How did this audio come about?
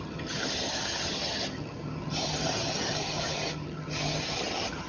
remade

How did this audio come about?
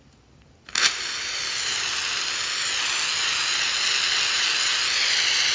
recorded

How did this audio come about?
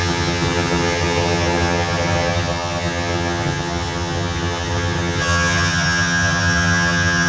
remade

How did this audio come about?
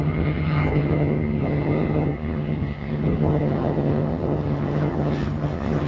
remade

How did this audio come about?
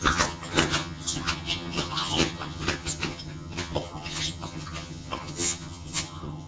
remade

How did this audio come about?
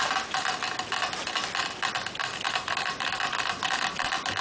recorded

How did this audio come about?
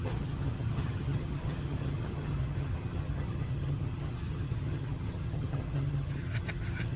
remade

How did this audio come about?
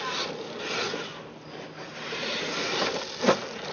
recorded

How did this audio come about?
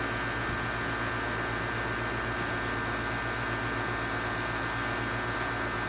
recorded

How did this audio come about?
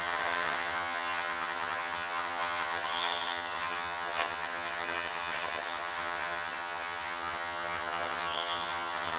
remade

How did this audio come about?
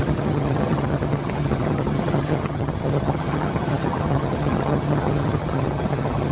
remade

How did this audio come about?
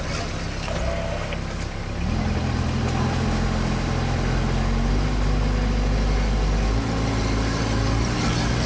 recorded